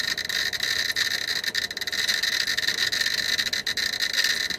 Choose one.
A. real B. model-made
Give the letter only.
A